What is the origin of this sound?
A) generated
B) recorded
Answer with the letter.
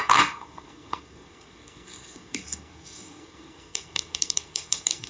A